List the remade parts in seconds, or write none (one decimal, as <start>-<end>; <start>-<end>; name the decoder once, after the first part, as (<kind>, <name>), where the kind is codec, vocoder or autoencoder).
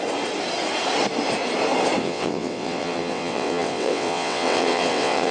2.0-5.3 (vocoder, WaveNeXt)